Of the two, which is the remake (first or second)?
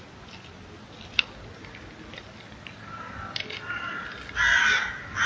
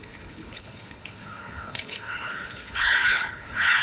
second